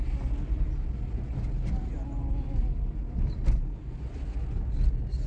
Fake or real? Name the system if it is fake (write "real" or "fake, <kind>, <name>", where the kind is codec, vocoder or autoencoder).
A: real